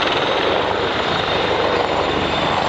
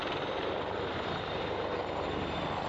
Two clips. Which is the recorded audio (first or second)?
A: second